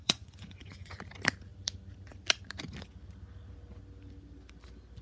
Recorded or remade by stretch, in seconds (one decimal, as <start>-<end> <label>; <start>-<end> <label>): 0.0-0.9 remade; 0.9-5.0 recorded